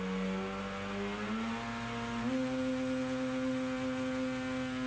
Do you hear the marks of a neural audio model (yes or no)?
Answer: no